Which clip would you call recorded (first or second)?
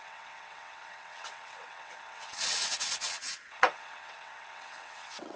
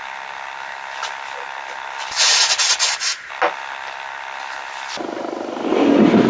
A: second